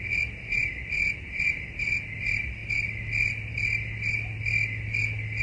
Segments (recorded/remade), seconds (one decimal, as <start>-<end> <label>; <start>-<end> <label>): 0.0-5.4 recorded